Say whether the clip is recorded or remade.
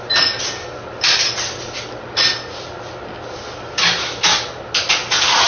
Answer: recorded